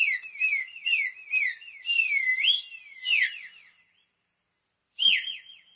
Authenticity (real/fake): real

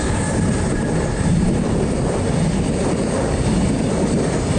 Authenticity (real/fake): fake